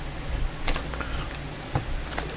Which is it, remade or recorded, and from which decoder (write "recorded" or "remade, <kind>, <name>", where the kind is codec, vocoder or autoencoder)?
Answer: recorded